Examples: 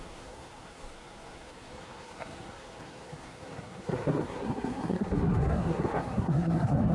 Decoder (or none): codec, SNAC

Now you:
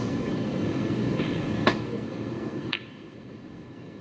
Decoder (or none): codec, SNAC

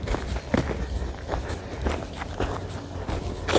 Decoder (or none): none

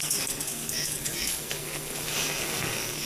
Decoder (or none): codec, SNAC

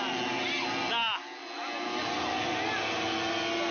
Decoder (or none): none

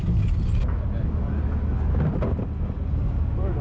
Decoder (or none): none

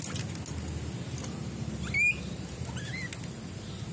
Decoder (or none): none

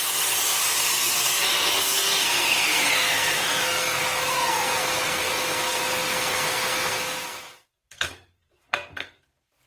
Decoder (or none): codec, SNAC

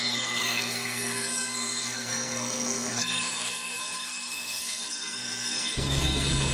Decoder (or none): codec, SNAC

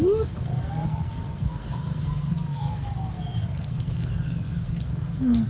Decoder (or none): codec, SNAC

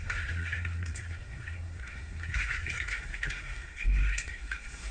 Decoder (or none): codec, SNAC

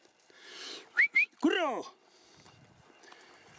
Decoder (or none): none